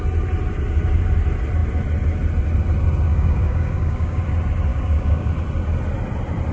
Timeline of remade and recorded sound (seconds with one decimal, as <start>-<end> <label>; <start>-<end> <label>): 0.0-3.1 recorded; 3.1-4.2 remade; 4.2-4.7 recorded; 4.7-5.3 remade; 5.3-6.5 recorded